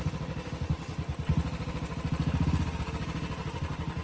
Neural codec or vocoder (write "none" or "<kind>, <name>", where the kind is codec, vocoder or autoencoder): none